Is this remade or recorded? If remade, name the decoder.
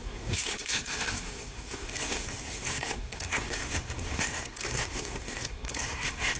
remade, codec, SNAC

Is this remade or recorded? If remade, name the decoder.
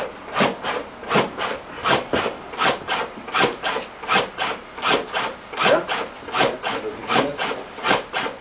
recorded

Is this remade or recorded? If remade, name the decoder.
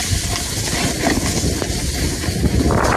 recorded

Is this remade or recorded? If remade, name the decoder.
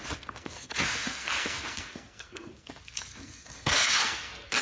remade, codec, SNAC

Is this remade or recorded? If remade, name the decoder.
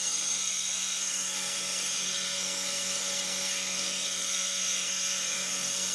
remade, codec, SNAC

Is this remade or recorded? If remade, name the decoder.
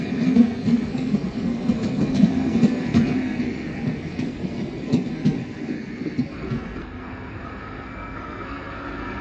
remade, codec, SNAC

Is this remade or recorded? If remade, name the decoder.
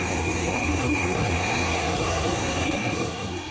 remade, codec, SNAC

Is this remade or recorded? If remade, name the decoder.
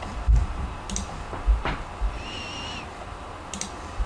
recorded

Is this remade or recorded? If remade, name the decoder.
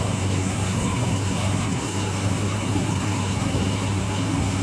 remade, codec, SNAC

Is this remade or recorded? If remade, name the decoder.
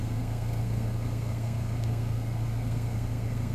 remade, codec, SNAC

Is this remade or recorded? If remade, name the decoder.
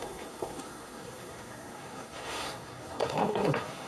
remade, codec, SNAC